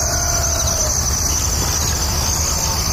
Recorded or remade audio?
recorded